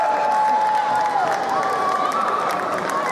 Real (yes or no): yes